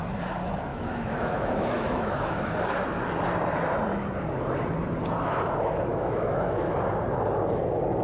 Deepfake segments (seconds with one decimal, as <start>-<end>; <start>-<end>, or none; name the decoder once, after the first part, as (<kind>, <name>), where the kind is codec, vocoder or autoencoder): 0.7-2.5 (autoencoder, DAC-VAE); 5.9-6.8

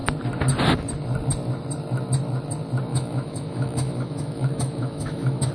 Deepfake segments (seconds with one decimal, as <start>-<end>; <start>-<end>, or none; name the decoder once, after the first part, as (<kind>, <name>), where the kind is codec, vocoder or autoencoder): 2.9-5.5 (autoencoder, DAC-VAE)

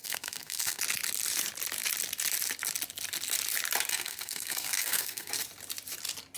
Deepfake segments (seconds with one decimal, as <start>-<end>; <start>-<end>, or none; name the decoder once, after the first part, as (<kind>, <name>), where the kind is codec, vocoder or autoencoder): 0.0-0.8 (codec, SNAC); 3.9-5.3

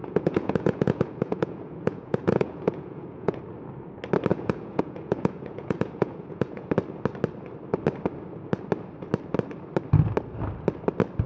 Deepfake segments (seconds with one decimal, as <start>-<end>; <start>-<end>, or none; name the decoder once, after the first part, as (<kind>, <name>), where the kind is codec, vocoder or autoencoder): 0.0-3.4 (vocoder, Vocos); 4.3-6.7